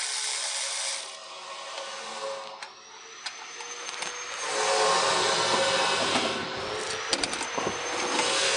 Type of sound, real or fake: real